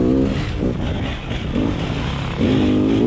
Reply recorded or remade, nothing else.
recorded